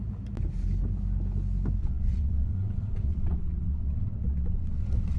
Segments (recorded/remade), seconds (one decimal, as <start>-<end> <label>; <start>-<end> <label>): 0.0-1.8 recorded; 1.8-5.2 remade